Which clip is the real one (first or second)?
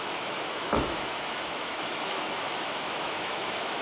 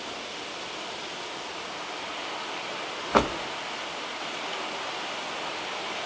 second